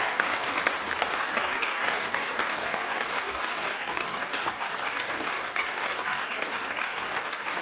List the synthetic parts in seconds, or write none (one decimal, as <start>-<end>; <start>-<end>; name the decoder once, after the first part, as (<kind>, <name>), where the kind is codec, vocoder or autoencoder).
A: 0.0-0.6 (codec, DAC); 1.1-7.6